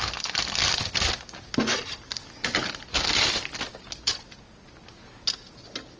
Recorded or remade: recorded